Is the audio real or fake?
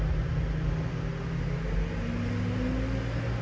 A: real